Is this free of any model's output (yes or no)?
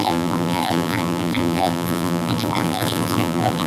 no